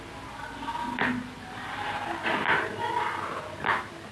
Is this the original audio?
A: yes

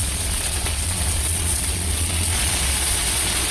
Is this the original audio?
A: no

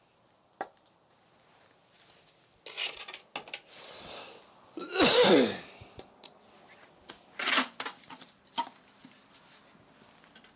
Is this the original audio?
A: yes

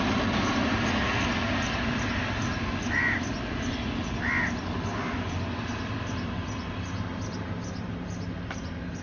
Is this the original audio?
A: yes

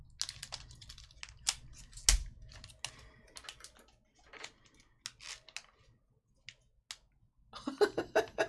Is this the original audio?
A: yes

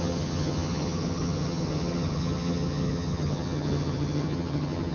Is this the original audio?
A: no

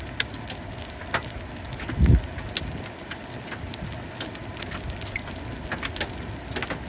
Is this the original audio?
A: yes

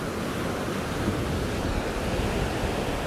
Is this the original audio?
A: yes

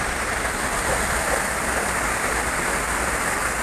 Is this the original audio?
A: yes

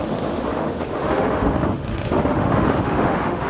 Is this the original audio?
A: no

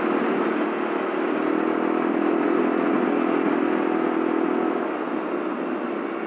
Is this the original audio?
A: yes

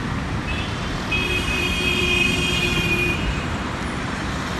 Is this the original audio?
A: no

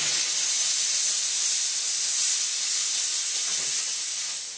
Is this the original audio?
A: yes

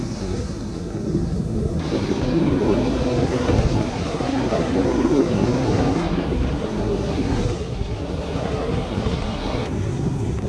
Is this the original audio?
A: no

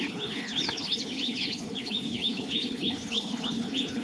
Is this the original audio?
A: no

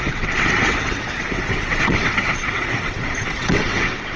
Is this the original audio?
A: no